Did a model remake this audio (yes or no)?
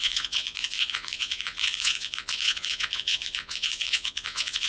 yes